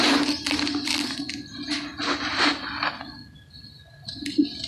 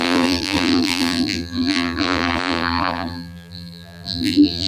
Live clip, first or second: first